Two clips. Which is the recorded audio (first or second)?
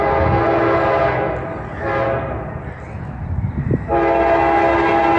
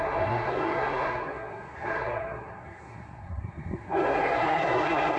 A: first